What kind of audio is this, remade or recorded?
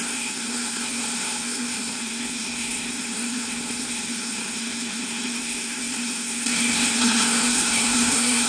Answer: remade